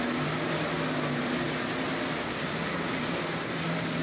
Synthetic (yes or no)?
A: no